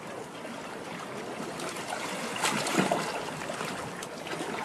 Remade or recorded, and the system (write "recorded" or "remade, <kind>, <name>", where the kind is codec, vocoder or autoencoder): recorded